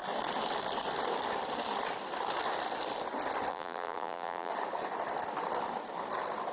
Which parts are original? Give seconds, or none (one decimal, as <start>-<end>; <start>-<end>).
0.0-3.5; 4.5-6.5